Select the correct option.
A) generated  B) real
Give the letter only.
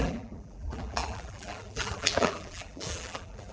A